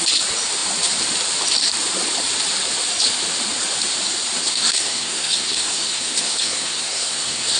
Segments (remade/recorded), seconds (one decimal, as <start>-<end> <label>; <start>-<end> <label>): 0.0-4.4 recorded; 4.4-7.6 remade